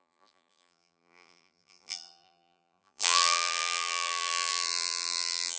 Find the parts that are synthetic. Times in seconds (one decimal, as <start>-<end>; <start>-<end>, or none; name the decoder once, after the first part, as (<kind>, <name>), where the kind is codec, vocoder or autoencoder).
0.0-5.6 (vocoder, BigVGAN v2)